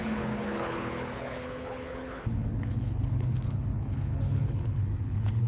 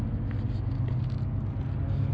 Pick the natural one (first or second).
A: second